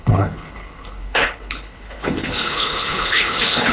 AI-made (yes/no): yes